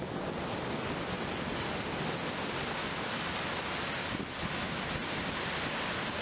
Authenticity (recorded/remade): recorded